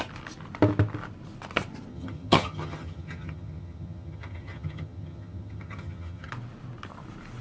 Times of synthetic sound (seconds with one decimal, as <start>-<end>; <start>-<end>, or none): 1.9-6.3